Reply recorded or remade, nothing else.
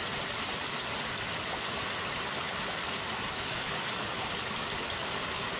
recorded